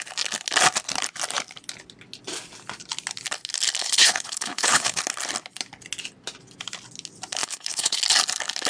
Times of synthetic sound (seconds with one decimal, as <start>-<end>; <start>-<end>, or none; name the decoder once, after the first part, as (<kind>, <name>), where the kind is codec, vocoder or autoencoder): 3.8-5.0 (codec, HILCodec); 7.4-8.0